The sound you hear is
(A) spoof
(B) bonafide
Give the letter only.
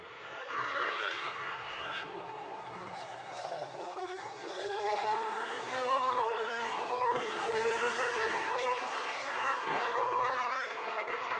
A